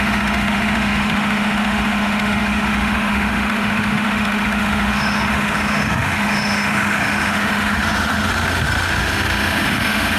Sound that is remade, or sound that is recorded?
remade